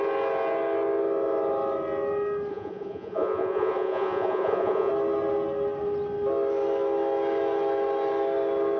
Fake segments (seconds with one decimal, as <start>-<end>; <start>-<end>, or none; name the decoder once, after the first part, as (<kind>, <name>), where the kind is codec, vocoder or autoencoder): 2.5-4.9 (vocoder, Vocos)